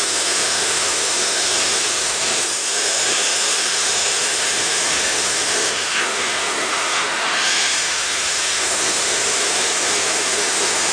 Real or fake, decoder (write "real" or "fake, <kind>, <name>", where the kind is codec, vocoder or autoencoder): fake, autoencoder, DAC-VAE